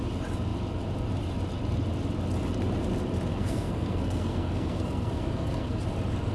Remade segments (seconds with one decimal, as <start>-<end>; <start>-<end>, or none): 3.3-5.8